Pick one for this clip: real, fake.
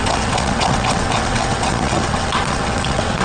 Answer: fake